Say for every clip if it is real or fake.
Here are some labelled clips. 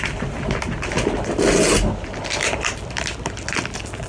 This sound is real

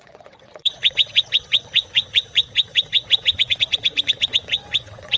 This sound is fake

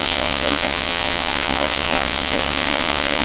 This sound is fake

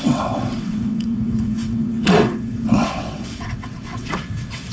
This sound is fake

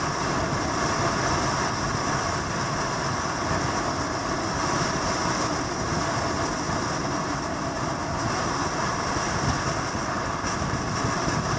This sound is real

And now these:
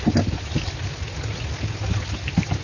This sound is real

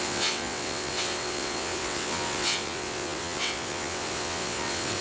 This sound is fake